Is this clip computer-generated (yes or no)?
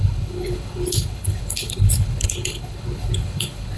yes